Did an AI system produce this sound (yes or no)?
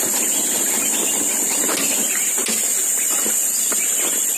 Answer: no